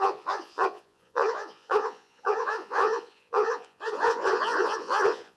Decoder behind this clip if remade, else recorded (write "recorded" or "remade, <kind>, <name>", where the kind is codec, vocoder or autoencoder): remade, vocoder, Vocos